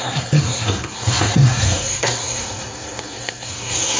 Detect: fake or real fake